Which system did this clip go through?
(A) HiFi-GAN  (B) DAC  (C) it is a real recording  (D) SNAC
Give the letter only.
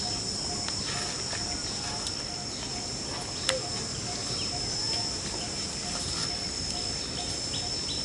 C